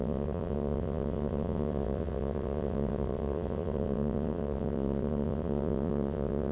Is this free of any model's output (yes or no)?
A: no